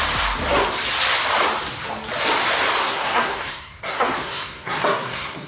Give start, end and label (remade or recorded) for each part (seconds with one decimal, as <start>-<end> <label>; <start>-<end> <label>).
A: 0.0-2.8 recorded; 2.8-5.5 remade